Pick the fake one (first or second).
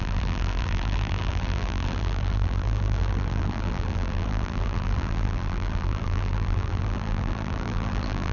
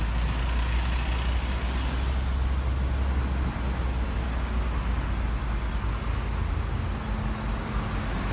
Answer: first